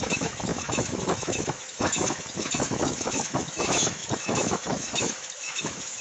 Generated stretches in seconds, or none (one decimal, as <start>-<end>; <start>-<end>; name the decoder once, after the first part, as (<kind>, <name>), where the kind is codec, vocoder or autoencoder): 0.0-6.0 (autoencoder, DAC-VAE)